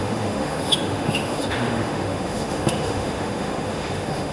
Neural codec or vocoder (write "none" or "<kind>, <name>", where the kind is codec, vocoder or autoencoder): autoencoder, DAC-VAE